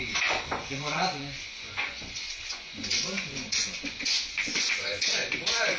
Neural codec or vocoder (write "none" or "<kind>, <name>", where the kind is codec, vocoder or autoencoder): vocoder, Vocos